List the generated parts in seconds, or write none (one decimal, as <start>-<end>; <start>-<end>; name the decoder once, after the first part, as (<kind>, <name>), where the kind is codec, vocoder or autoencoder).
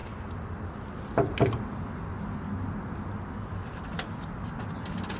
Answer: none